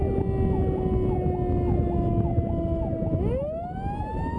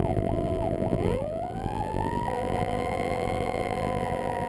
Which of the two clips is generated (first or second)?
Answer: second